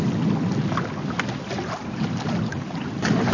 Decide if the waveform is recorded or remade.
recorded